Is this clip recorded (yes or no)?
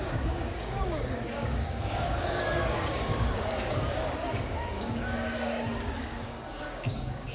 no